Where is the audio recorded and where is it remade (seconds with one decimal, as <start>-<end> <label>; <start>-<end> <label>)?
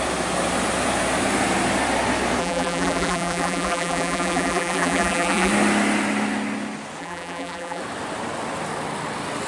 0.0-2.4 recorded; 2.4-5.5 remade; 5.5-7.0 recorded; 7.0-7.8 remade; 7.8-9.5 recorded